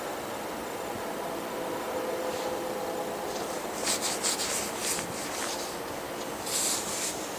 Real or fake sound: real